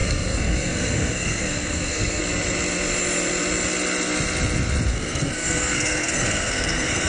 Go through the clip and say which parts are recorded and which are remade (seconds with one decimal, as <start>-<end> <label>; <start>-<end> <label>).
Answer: 0.0-2.2 remade; 2.2-4.9 recorded; 4.9-7.1 remade